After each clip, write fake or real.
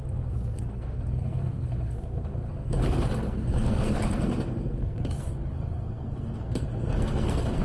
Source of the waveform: fake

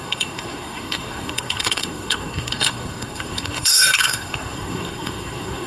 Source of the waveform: fake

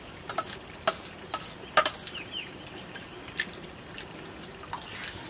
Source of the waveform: real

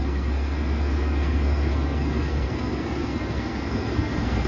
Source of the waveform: fake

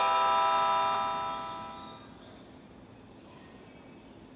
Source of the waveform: real